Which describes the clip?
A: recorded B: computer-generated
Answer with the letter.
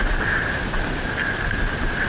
A